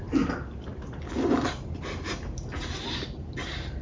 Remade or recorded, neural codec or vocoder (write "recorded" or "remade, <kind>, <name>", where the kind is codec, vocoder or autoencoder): recorded